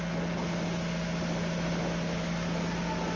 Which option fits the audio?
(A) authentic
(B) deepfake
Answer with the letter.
A